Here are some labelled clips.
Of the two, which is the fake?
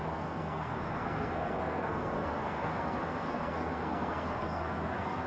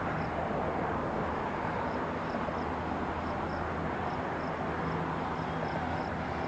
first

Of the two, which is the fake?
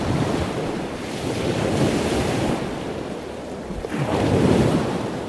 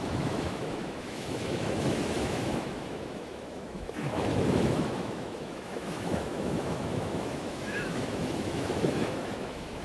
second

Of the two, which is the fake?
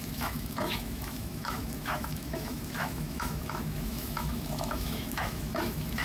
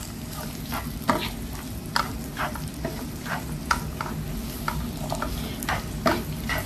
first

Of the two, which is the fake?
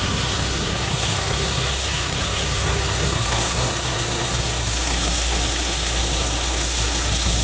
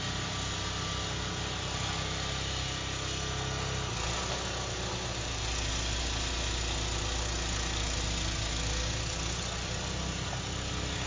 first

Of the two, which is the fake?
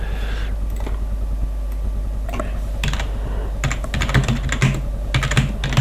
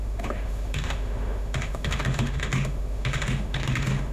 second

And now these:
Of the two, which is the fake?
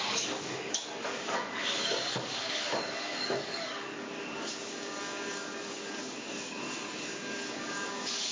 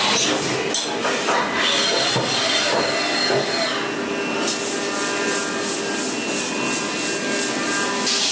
first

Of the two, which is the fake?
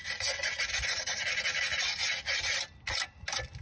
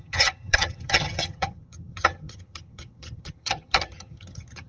second